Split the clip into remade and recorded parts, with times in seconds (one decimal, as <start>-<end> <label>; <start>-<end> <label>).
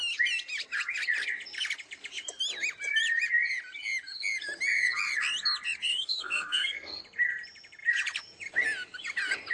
0.0-5.9 recorded; 5.9-7.0 remade; 7.0-9.5 recorded